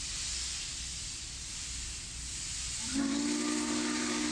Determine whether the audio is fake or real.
real